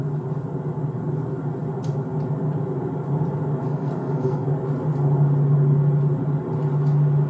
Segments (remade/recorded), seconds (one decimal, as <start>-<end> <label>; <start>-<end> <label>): 0.0-3.6 recorded; 3.6-4.5 remade; 4.5-7.3 recorded